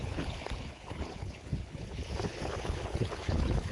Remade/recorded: remade